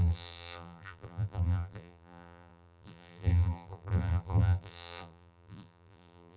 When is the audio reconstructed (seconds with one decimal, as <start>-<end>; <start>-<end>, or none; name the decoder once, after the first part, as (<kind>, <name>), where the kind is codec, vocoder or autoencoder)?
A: 0.0-6.4 (vocoder, BigVGAN v2)